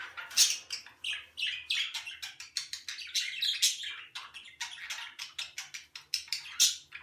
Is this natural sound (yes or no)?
yes